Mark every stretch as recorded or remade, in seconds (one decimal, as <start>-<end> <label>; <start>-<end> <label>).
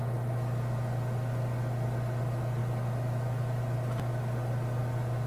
0.0-5.3 recorded